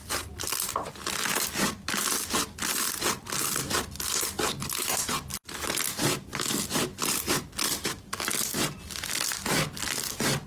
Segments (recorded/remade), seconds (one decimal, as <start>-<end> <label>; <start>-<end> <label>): 0.0-10.5 recorded